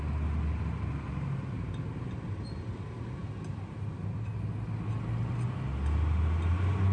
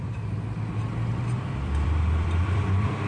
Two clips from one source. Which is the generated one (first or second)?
second